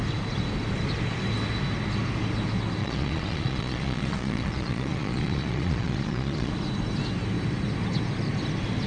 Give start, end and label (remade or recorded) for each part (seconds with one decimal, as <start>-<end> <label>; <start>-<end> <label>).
0.0-2.8 recorded; 2.8-6.5 remade; 6.5-8.9 recorded